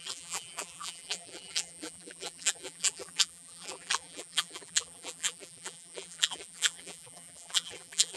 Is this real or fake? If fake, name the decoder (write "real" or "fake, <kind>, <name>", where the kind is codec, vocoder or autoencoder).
fake, vocoder, BigVGAN v2